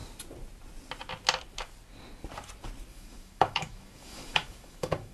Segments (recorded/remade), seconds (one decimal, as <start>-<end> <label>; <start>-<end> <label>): 0.0-2.9 recorded; 2.9-5.1 remade